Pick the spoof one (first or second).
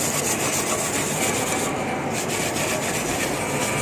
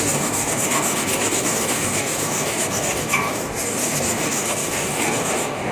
second